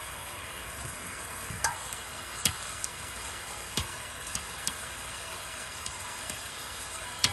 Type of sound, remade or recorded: remade